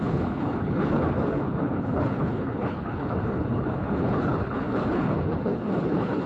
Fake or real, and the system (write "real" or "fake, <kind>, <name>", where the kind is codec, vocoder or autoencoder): fake, codec, HILCodec